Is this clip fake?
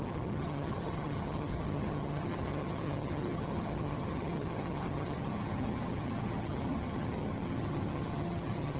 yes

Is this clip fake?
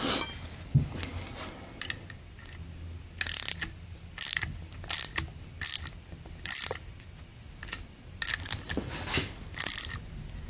no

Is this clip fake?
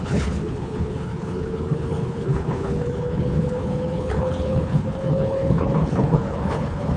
yes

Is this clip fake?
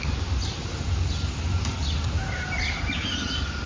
no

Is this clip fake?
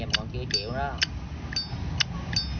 no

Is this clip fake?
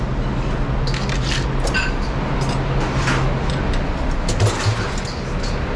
no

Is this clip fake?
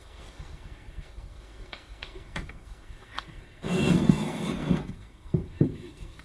yes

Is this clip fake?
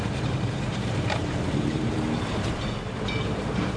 yes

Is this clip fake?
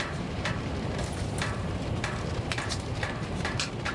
yes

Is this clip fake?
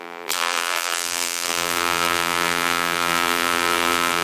yes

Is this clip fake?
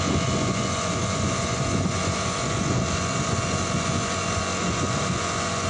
yes